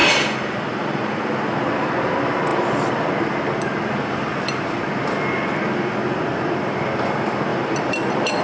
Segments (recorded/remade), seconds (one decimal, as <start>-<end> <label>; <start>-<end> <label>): 0.0-1.2 remade; 1.2-2.5 recorded; 2.5-3.1 remade; 3.1-7.5 recorded; 7.5-8.4 remade